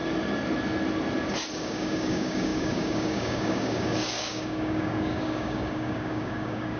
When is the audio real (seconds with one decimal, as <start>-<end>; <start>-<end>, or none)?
0.0-1.5